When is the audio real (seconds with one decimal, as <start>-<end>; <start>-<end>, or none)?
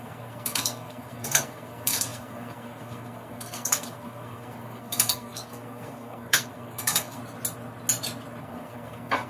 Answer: 7.2-8.4